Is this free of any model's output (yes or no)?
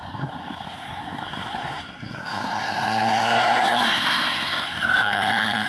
no